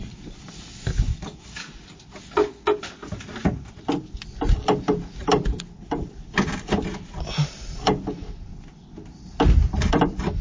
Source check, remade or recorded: recorded